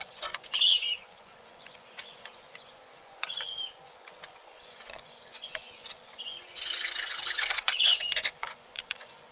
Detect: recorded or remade remade